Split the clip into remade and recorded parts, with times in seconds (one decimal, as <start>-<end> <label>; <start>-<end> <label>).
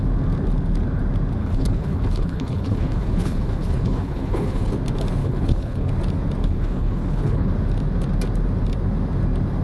0.0-1.4 recorded; 1.4-4.7 remade; 4.7-5.2 recorded; 5.2-5.9 remade; 5.9-6.4 recorded; 6.4-7.5 remade; 7.5-9.6 recorded